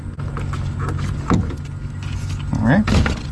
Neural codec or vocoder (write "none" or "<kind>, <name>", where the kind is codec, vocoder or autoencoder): none